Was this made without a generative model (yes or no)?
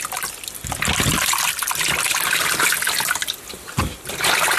yes